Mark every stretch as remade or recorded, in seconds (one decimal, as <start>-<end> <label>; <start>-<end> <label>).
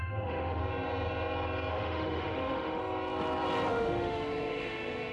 0.0-0.6 remade; 0.6-1.7 recorded; 1.7-2.8 remade; 2.8-3.7 recorded; 3.7-5.1 remade